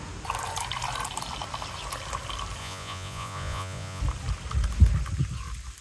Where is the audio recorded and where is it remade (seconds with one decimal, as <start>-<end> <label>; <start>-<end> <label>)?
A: 0.0-2.6 recorded; 2.6-4.0 remade; 4.0-5.8 recorded